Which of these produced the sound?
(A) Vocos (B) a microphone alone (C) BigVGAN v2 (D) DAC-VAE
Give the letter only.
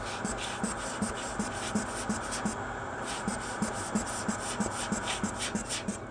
B